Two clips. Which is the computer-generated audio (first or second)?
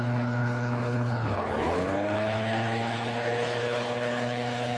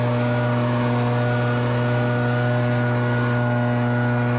first